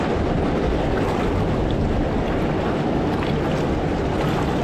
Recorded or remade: recorded